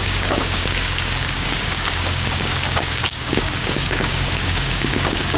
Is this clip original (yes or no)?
no